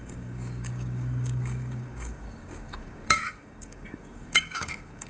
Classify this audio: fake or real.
fake